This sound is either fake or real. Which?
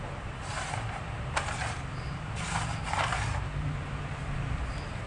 fake